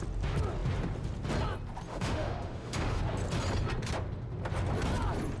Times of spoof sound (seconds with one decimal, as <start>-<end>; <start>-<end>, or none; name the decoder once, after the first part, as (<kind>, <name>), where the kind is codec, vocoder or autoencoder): 1.9-3.0 (autoencoder, DAC-VAE)